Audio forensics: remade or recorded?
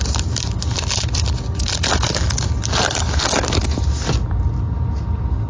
recorded